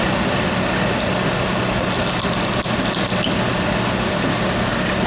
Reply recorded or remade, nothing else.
recorded